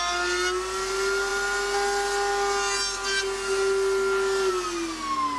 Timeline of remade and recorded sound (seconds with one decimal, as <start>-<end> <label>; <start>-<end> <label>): 0.0-5.4 recorded